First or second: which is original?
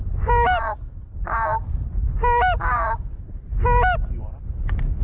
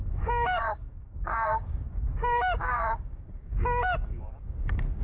first